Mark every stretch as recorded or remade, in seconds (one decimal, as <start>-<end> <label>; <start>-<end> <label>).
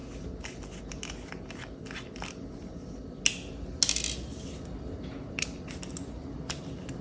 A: 0.0-7.0 recorded